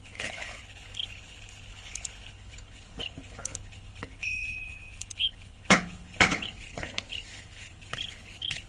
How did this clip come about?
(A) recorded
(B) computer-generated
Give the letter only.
B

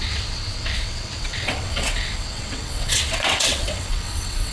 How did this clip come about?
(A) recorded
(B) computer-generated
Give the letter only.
B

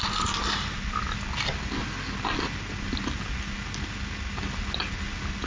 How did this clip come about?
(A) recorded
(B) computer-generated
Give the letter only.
A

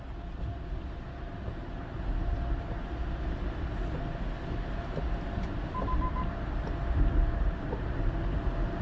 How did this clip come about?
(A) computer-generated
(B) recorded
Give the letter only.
B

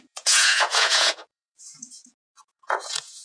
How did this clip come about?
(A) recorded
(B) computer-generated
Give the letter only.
B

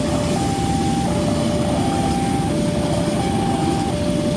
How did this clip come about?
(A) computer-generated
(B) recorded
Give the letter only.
B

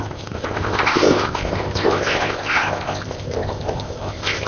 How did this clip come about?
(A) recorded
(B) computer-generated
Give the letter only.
B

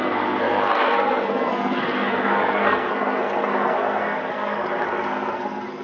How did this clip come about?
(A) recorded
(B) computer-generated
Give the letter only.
B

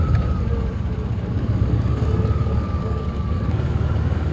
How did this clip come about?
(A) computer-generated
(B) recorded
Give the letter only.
A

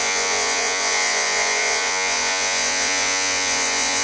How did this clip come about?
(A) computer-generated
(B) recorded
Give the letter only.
A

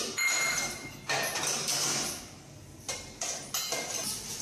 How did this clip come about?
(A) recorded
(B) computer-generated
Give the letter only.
A